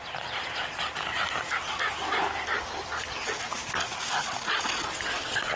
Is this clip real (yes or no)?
yes